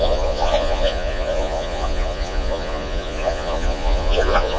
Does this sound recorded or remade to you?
remade